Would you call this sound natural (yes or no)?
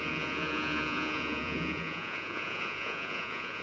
no